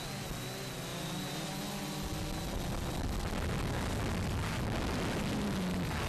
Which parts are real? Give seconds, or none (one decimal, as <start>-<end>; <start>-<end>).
0.0-6.1